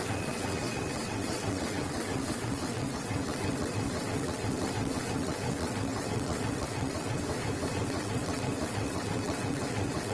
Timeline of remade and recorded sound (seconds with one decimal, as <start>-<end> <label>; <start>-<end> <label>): 0.0-7.2 remade; 7.2-7.7 recorded; 7.7-10.1 remade